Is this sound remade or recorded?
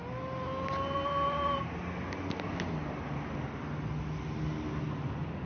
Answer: recorded